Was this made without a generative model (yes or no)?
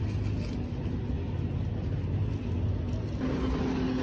yes